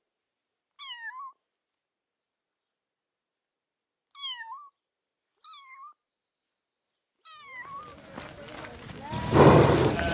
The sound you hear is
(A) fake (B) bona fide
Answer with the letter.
B